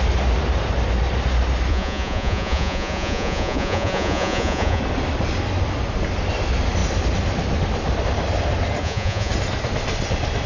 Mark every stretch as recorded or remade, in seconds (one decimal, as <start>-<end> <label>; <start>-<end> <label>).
0.0-1.7 recorded; 1.7-4.8 remade; 4.8-8.8 recorded; 8.8-9.3 remade; 9.3-10.5 recorded